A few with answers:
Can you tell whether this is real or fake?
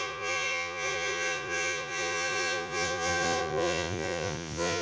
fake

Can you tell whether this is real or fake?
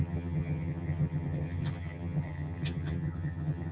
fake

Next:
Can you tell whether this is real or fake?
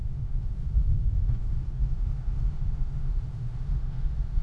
fake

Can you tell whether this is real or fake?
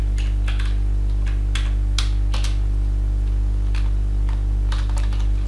real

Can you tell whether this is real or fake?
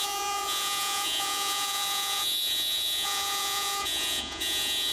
fake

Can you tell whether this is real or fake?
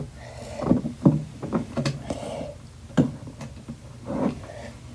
real